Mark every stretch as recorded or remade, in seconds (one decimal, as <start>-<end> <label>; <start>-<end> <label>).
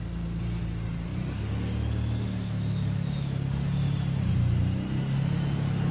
0.0-5.9 recorded